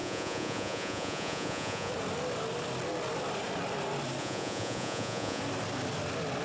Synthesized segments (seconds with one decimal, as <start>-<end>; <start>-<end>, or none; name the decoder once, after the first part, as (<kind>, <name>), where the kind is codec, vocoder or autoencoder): 0.0-1.9 (vocoder, Vocos); 4.2-5.4